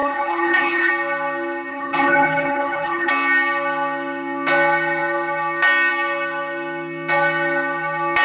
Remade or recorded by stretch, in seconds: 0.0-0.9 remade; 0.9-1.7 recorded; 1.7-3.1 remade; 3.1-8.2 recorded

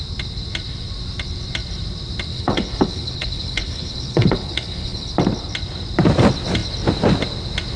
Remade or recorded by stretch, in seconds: 0.0-2.3 recorded; 2.3-5.1 remade; 5.1-7.8 recorded

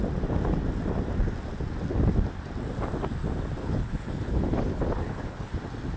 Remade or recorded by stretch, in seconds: 0.0-3.6 recorded; 3.6-5.5 remade; 5.5-6.0 recorded